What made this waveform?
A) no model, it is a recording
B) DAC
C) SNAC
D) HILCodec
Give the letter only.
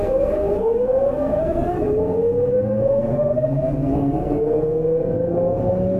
C